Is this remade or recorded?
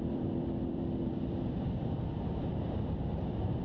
remade